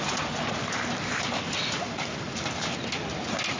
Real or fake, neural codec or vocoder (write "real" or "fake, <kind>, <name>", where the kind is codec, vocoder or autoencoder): real